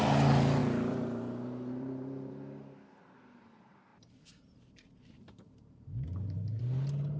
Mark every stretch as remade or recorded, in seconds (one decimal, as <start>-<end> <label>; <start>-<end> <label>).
0.0-0.6 recorded; 0.6-2.3 remade; 2.3-3.9 recorded; 3.9-6.6 remade; 6.6-7.2 recorded